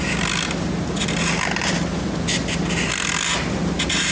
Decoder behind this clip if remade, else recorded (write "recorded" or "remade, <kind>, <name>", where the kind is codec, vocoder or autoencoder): recorded